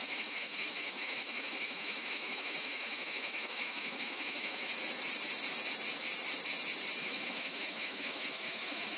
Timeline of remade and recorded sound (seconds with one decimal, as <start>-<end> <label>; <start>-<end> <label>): 0.0-4.7 remade; 4.7-7.0 recorded; 7.0-9.0 remade